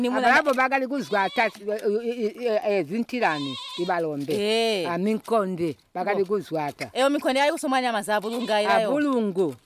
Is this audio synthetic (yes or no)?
no